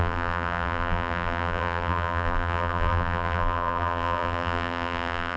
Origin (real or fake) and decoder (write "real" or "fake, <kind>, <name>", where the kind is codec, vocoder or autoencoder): fake, vocoder, BigVGAN v2